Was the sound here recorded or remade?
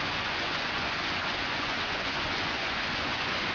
remade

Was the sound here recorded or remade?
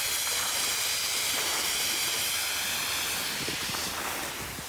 recorded